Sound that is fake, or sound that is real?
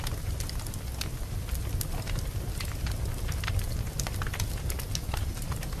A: real